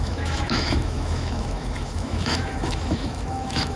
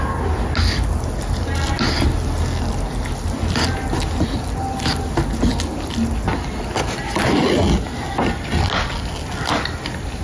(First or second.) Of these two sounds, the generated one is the first